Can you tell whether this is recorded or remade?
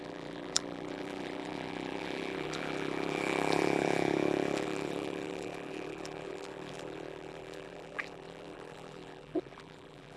remade